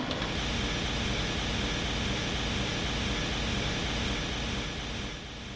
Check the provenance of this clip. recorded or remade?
recorded